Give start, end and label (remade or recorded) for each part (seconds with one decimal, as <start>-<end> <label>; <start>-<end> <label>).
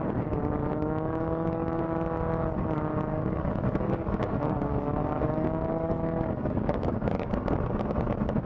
0.0-0.6 recorded; 0.6-1.8 remade; 1.8-3.1 recorded; 3.1-7.3 remade; 7.3-8.5 recorded